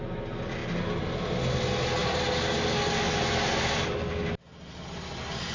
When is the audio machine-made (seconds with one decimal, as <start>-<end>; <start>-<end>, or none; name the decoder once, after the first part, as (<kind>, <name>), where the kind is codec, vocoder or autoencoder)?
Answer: none